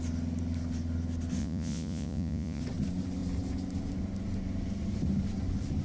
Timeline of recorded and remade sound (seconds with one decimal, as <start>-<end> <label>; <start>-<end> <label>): 0.0-1.4 recorded; 1.4-2.6 remade; 2.6-5.8 recorded